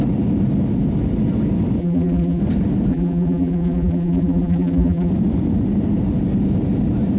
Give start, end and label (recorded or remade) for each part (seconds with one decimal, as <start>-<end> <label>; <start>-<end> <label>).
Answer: 0.0-1.8 recorded; 1.8-2.4 remade; 2.4-2.9 recorded; 2.9-5.1 remade; 5.1-7.2 recorded